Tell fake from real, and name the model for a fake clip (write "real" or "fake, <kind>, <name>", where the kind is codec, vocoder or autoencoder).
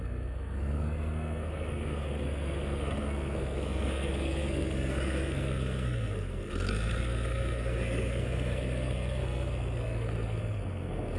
fake, codec, SNAC